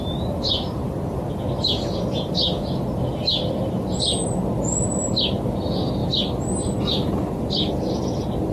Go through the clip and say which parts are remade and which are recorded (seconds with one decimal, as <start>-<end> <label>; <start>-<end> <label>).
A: 0.0-8.5 recorded